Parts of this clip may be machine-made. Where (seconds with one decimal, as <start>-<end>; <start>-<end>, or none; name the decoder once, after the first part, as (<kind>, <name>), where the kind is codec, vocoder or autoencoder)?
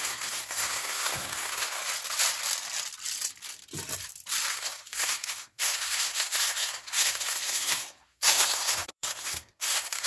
0.0-1.8 (codec, SNAC); 4.5-10.1